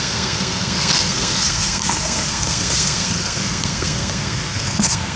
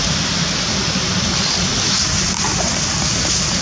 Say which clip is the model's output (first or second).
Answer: first